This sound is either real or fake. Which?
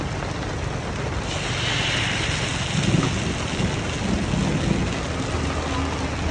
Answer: real